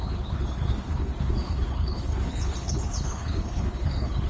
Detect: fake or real fake